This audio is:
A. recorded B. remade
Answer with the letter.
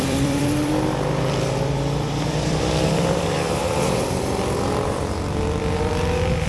B